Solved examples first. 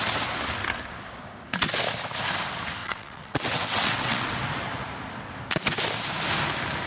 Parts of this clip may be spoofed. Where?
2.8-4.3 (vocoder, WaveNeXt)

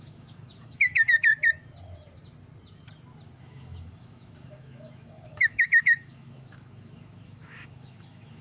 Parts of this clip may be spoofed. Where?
0.0-1.3 (autoencoder, DAC-VAE); 3.4-8.4

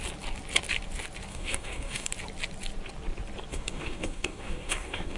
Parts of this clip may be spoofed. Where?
1.3-2.1 (codec, DAC); 3.5-5.2